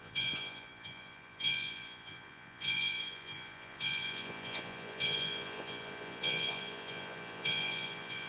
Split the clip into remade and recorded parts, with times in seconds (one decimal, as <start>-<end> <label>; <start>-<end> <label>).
0.0-8.3 remade